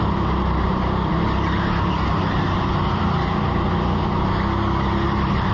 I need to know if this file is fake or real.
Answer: real